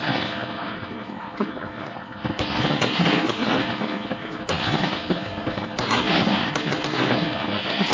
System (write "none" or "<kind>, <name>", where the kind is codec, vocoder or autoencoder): codec, SNAC